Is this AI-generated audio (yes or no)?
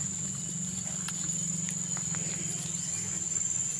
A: no